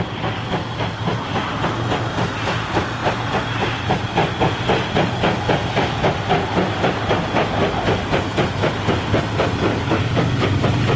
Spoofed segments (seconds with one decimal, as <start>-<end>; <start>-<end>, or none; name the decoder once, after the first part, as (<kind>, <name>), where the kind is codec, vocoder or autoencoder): 9.7-10.6 (codec, DAC)